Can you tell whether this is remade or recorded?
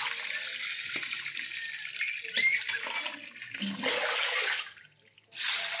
recorded